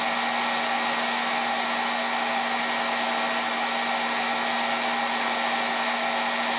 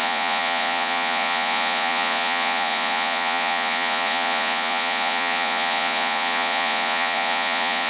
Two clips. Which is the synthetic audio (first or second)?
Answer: second